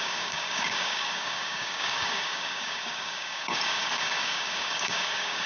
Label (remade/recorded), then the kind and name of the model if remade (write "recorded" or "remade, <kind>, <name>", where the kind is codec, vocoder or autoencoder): remade, codec, DAC